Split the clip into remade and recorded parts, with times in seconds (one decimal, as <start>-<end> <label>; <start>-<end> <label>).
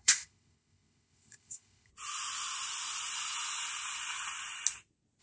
0.0-1.9 remade; 1.9-5.2 recorded